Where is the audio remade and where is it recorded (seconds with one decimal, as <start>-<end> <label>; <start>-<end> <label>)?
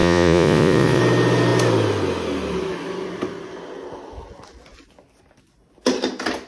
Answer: 0.0-1.0 remade; 1.0-6.5 recorded